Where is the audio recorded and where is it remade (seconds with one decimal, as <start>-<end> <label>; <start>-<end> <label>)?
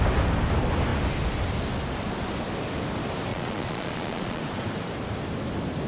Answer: 0.0-3.3 recorded; 3.3-4.4 remade; 4.4-5.9 recorded